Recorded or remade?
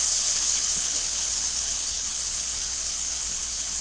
remade